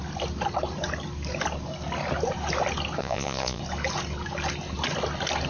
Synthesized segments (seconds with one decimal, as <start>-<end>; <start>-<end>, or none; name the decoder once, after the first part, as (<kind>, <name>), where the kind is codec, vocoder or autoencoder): 3.0-3.6 (vocoder, Vocos)